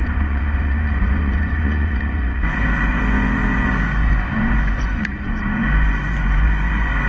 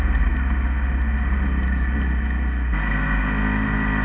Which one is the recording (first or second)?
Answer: second